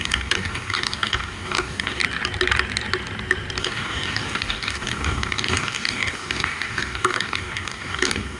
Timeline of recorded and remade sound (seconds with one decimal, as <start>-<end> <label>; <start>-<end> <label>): 0.0-2.0 remade; 2.0-3.6 recorded; 3.6-8.4 remade